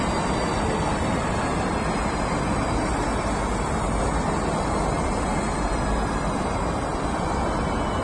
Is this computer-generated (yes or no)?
no